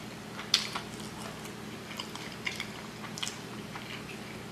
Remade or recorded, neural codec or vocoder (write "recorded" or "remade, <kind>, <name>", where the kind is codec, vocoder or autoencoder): recorded